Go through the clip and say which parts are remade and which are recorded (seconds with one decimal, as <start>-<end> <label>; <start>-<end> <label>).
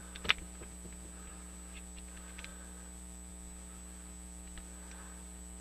0.0-5.6 recorded